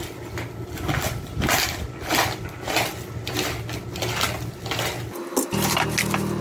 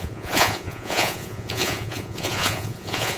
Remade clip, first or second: second